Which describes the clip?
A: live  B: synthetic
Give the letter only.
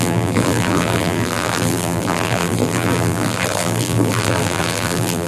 B